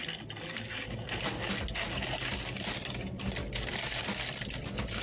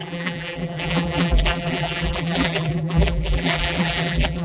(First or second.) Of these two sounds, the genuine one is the first